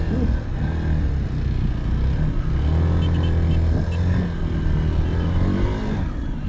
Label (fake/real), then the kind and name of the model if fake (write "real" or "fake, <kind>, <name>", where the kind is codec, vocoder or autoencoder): real